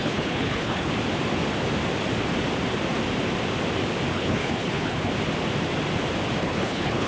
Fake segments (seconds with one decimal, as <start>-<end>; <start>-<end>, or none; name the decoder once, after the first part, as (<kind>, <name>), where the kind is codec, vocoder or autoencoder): 0.0-0.9 (codec, HILCodec); 4.1-5.1; 6.4-7.1